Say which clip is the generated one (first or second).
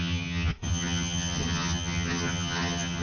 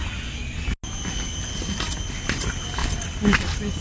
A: first